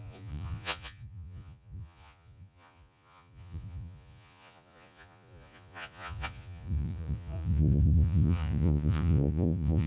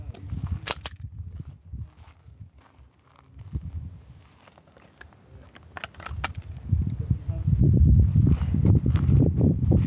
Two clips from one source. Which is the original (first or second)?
second